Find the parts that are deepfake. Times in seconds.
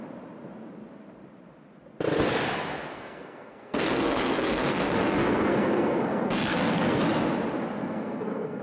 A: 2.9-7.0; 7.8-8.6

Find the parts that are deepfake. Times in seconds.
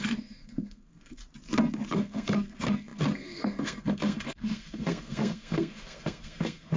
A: 0.0-1.2; 1.9-6.8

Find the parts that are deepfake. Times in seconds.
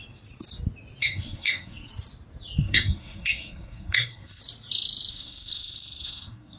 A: 1.0-1.9; 2.6-4.4; 5.1-6.6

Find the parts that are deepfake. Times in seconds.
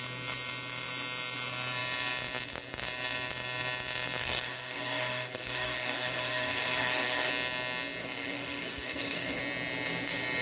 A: 4.2-7.3; 8.0-9.4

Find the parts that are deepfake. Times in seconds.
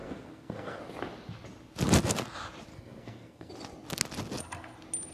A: 0.0-0.8; 2.7-3.5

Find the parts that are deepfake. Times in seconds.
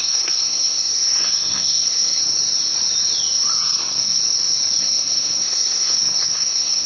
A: 0.0-2.2; 3.6-4.2; 4.8-6.9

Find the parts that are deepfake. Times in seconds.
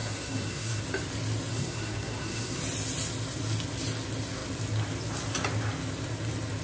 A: 0.0-0.8; 1.5-2.6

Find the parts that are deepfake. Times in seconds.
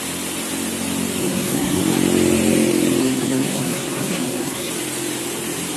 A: 1.2-1.8; 3.0-4.7